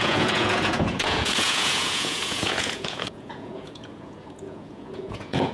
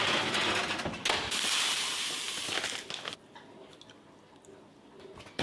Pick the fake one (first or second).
first